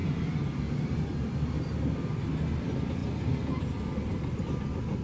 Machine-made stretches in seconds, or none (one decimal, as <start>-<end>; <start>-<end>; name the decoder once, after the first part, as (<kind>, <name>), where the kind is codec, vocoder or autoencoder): none